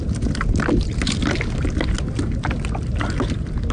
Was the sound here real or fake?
real